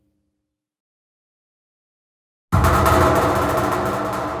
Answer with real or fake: real